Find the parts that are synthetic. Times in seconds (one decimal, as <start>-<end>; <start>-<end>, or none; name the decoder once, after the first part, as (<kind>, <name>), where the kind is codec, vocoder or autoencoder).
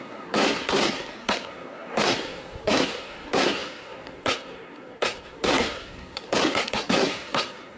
0.0-7.8 (codec, SNAC)